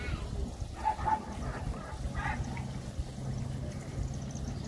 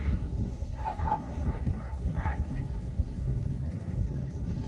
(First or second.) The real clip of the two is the first